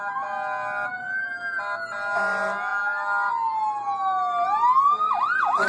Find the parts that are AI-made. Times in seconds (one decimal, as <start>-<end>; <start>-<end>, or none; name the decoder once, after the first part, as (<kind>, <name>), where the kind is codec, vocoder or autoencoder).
none